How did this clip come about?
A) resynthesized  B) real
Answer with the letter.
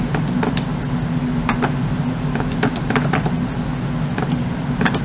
B